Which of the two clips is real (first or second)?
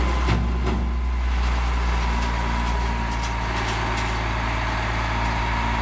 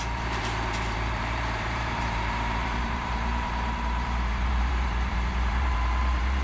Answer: first